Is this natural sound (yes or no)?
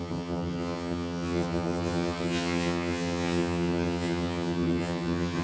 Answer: no